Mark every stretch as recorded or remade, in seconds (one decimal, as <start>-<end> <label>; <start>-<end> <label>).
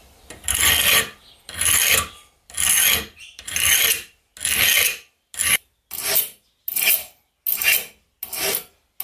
0.0-9.0 recorded